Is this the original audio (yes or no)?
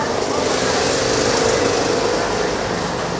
yes